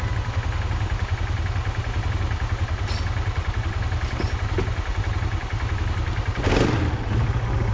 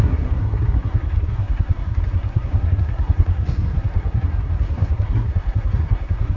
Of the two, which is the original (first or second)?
first